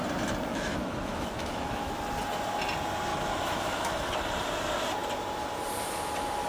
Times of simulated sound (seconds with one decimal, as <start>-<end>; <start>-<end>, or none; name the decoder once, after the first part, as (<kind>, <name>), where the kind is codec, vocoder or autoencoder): 0.5-1.9 (autoencoder, DAC-VAE); 3.1-4.0